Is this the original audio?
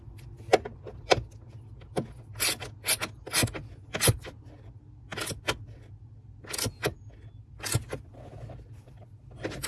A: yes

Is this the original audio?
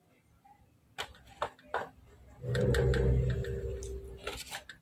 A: yes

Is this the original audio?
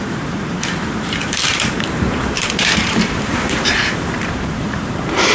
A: no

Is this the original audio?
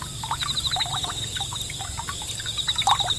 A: yes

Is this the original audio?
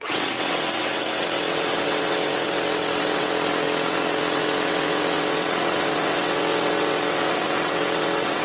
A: no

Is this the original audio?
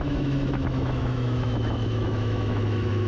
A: no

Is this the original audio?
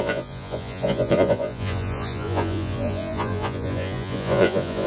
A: no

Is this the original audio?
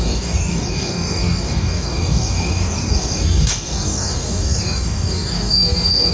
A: no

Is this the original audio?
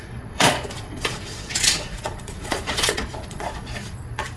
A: no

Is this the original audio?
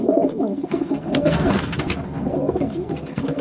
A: no